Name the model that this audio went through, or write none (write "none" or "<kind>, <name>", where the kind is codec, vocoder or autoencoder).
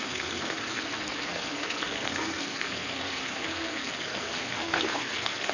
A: codec, SNAC